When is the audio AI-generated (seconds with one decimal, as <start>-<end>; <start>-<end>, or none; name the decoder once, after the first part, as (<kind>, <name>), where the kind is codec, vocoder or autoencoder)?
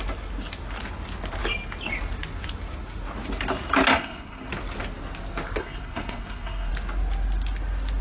3.9-4.5 (codec, SNAC); 5.6-6.7